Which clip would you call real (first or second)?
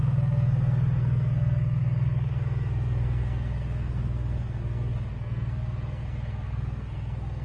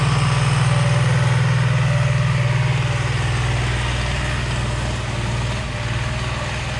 second